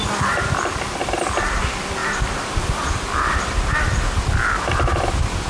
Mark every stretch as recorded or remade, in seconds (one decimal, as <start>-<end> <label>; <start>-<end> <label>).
0.0-2.0 remade; 2.0-5.5 recorded